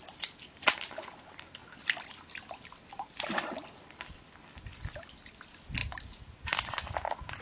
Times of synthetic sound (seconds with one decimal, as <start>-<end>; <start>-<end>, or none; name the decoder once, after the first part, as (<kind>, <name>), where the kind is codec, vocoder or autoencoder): none